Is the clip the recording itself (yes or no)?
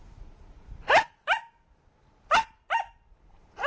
yes